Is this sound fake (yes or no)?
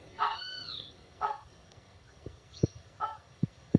yes